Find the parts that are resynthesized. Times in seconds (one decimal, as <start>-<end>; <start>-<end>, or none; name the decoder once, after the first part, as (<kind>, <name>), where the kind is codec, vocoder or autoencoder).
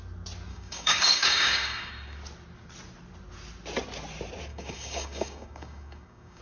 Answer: 0.5-1.9 (codec, DAC); 4.5-6.4